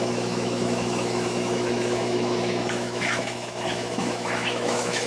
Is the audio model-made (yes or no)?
yes